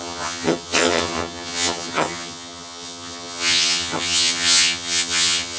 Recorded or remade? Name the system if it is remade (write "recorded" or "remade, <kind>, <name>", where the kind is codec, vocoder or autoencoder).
remade, vocoder, HiFi-GAN